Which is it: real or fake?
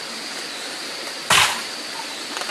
real